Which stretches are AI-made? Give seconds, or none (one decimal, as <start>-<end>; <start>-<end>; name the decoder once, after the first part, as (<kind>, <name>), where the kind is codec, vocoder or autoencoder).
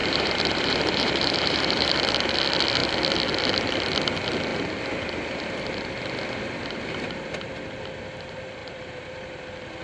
0.0-1.9 (vocoder, BigVGAN v2); 8.6-9.4